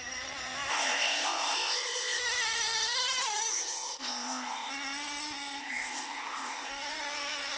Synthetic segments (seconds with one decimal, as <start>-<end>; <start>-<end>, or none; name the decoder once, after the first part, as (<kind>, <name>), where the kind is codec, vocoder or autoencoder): 0.7-2.2 (codec, ZipCodec); 3.5-4.7; 5.6-6.7